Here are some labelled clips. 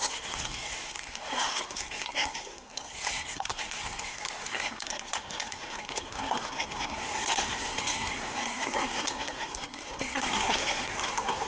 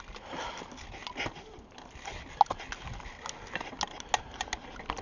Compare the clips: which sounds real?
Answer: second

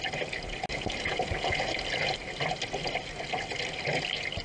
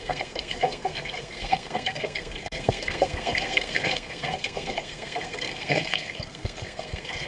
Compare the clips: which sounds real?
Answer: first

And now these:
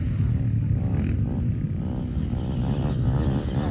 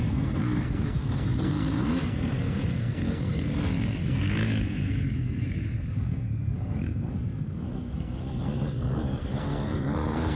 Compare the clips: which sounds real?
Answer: first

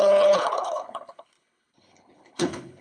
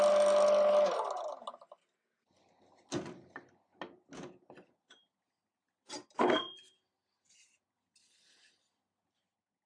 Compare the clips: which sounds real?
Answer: second